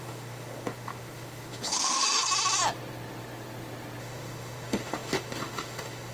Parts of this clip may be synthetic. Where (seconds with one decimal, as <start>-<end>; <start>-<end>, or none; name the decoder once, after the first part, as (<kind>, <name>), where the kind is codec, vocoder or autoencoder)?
0.0-2.2 (autoencoder, DAC-VAE); 4.0-6.1